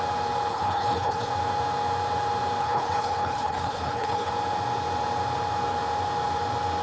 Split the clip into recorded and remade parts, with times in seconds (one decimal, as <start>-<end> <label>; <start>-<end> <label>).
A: 0.0-0.5 recorded; 0.5-1.3 remade; 1.3-2.6 recorded; 2.6-4.3 remade; 4.3-6.8 recorded